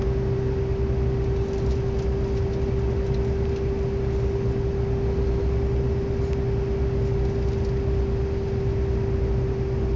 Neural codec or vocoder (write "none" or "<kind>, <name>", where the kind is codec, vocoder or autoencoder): none